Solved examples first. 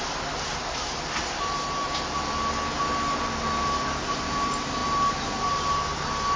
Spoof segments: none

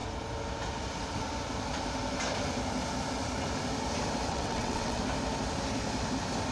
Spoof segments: 4.3-5.0 (vocoder, WaveNeXt)

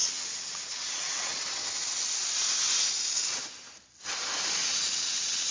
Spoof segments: 0.0-1.4 (vocoder, WaveNeXt); 4.6-5.5

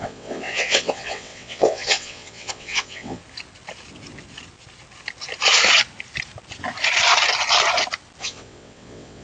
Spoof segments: 0.0-3.2 (vocoder, WaveNeXt); 8.2-9.2

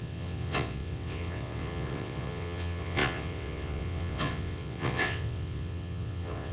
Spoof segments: 0.0-6.5 (vocoder, WaveNeXt)